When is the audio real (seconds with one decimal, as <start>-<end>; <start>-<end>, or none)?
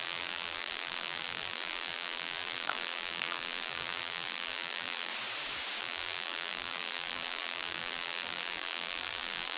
5.1-5.8